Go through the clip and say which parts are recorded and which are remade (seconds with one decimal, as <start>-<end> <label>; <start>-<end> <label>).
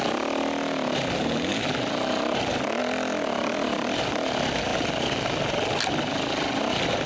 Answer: 0.0-7.1 recorded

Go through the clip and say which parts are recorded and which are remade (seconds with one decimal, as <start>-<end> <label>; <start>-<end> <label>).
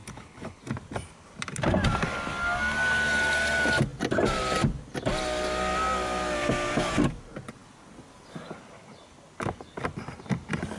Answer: 0.0-0.6 remade; 0.6-10.8 recorded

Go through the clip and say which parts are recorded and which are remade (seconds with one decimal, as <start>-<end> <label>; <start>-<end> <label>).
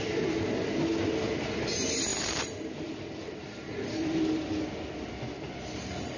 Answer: 0.0-6.2 remade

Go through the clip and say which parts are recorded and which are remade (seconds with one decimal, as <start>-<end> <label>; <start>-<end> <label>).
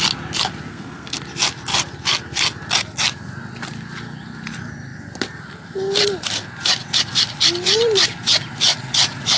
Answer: 0.0-0.7 recorded; 0.7-1.2 remade; 1.2-9.4 recorded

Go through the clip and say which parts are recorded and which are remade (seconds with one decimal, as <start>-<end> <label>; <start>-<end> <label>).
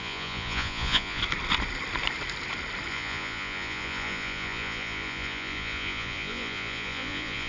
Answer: 0.0-1.2 remade; 1.2-2.9 recorded; 2.9-7.5 remade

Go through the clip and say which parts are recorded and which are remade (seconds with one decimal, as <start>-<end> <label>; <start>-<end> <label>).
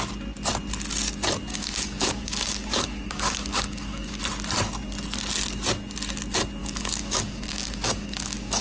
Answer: 0.0-1.5 recorded; 1.5-4.2 remade; 4.2-6.6 recorded; 6.6-8.6 remade